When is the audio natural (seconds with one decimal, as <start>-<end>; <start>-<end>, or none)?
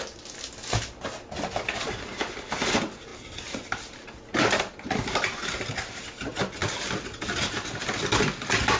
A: 0.0-8.8